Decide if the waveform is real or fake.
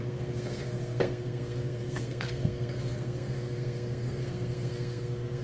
fake